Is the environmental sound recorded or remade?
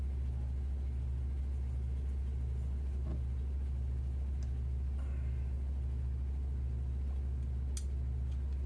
recorded